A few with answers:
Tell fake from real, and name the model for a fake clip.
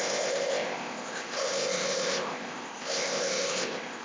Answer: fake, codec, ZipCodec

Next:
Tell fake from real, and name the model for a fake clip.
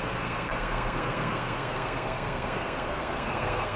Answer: fake, codec, SNAC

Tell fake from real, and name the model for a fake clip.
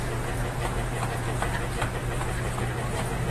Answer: real